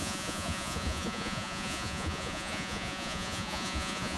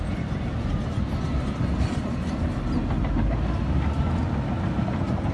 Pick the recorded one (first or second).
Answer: second